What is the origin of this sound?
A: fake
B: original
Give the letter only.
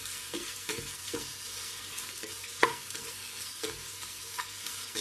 A